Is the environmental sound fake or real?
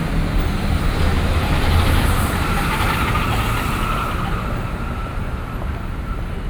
real